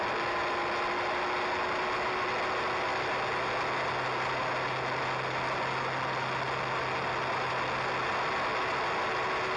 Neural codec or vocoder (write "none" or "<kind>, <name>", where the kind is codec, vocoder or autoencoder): none